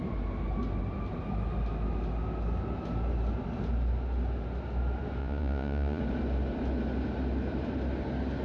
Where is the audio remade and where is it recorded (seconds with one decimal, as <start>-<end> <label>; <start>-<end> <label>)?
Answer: 0.0-5.2 recorded; 5.2-6.0 remade; 6.0-8.4 recorded